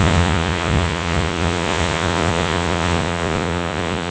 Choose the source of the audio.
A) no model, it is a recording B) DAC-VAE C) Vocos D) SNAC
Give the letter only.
C